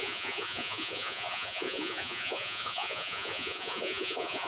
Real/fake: fake